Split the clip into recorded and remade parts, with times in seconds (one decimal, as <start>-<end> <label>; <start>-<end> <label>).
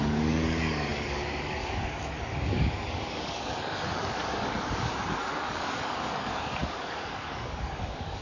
0.0-8.2 remade